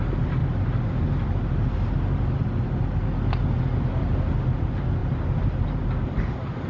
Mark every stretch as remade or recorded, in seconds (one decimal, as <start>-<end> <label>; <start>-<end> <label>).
0.0-6.7 recorded